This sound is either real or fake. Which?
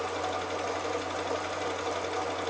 real